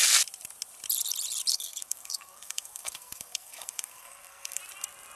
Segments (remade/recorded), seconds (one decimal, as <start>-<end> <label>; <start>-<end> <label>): 0.0-1.5 recorded; 1.5-4.6 remade; 4.6-5.2 recorded